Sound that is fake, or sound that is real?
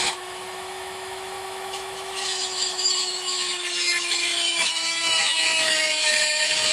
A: fake